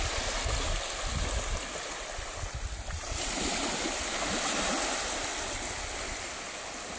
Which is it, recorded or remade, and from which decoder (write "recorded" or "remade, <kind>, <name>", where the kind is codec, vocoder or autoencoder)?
recorded